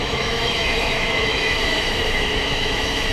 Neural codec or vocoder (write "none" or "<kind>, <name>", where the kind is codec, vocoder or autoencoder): autoencoder, DAC-VAE